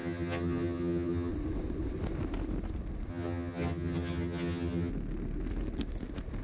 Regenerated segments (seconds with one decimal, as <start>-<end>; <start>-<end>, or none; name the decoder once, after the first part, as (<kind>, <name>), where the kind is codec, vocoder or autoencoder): 0.0-1.3 (vocoder, HiFi-GAN); 3.1-4.9